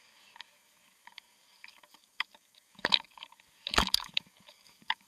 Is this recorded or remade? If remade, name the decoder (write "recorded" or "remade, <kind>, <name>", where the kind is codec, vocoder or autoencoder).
remade, codec, DAC